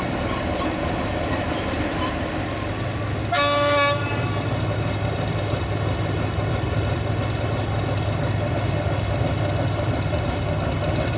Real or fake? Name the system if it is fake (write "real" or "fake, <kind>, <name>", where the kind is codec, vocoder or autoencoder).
real